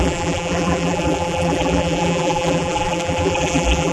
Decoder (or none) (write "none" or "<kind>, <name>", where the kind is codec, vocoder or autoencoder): vocoder, BigVGAN v2